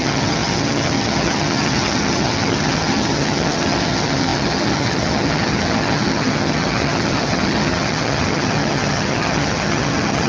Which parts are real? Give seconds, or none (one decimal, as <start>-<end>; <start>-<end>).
none